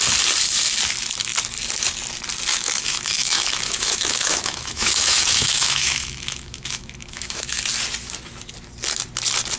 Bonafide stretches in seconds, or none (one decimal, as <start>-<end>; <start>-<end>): 0.0-2.5; 7.6-9.6